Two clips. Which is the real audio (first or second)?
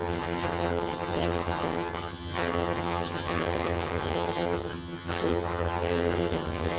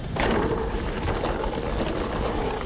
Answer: second